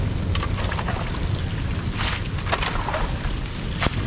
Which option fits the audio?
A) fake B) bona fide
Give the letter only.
B